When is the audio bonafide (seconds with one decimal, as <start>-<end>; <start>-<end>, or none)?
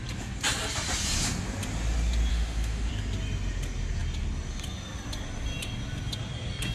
0.0-2.3; 2.9-6.7